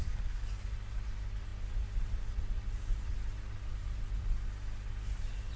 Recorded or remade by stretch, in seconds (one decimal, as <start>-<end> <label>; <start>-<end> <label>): 0.0-0.5 remade; 0.5-5.6 recorded